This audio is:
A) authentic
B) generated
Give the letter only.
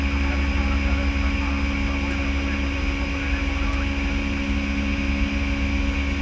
A